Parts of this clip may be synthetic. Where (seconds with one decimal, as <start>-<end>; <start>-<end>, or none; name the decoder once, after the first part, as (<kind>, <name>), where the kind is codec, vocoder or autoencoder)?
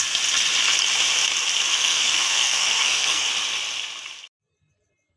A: 1.7-3.3 (codec, SNAC)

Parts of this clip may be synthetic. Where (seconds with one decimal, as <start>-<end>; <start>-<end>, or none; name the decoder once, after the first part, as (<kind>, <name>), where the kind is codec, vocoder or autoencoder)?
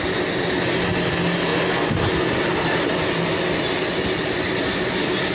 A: none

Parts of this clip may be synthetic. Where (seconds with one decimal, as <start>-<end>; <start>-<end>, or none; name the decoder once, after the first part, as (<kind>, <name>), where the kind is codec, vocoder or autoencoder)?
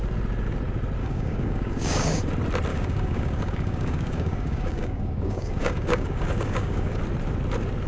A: 1.0-2.2 (codec, DAC); 2.7-7.0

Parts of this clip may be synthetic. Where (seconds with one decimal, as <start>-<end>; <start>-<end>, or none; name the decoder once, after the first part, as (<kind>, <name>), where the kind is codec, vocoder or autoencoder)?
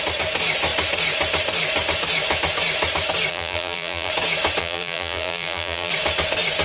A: 3.3-4.1 (vocoder, BigVGAN v2); 4.6-5.9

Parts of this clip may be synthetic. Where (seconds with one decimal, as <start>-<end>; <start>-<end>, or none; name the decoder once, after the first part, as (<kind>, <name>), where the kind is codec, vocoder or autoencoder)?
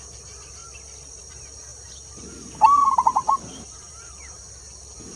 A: 0.0-0.6 (vocoder, BigVGAN v2); 1.2-5.2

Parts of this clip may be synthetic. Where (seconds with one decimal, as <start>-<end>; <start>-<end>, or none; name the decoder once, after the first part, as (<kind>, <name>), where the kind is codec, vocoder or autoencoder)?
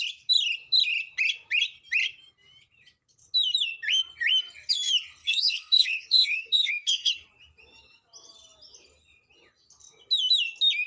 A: 5.2-7.1 (codec, SNAC)